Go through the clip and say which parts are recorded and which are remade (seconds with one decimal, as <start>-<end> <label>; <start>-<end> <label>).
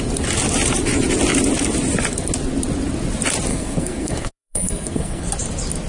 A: 0.0-3.5 recorded; 3.5-5.3 remade; 5.3-5.9 recorded